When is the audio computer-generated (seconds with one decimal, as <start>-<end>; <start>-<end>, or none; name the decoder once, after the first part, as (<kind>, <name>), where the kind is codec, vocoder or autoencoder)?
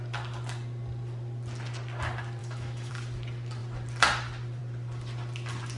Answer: 2.4-2.9 (autoencoder, DAC-VAE)